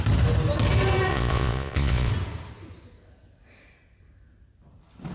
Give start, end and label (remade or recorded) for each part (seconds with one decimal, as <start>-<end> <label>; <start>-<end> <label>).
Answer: 0.0-1.1 recorded; 1.1-2.1 remade; 2.1-5.1 recorded